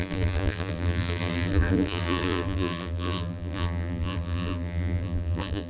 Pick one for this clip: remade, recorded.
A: remade